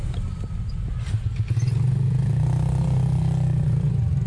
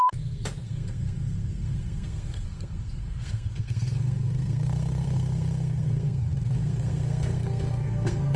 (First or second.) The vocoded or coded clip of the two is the second